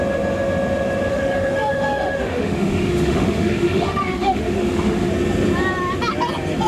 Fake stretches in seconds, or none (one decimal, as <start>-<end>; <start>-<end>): 1.1-5.1